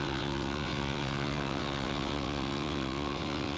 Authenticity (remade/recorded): remade